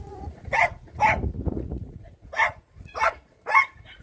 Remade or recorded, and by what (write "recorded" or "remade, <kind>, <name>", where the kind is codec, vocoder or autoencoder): remade, vocoder, Vocos